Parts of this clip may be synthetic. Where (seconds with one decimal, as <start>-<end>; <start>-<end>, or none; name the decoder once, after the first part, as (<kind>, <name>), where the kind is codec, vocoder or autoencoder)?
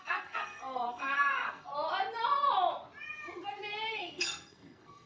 0.0-1.7 (codec, SNAC); 3.9-5.1